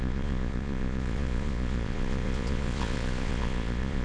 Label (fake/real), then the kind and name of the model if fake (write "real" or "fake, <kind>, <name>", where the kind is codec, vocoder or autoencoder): fake, vocoder, Vocos